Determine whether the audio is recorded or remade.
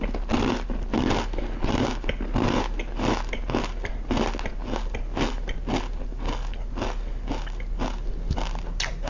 recorded